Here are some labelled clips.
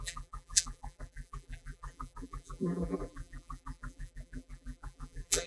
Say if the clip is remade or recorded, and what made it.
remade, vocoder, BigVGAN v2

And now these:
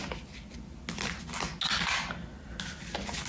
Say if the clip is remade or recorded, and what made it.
recorded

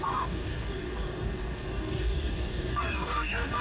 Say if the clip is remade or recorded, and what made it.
remade, codec, DAC